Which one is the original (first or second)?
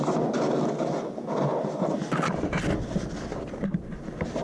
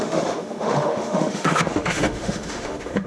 first